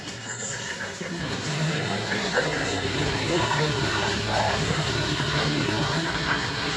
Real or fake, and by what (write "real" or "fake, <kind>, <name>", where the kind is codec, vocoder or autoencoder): fake, codec, SNAC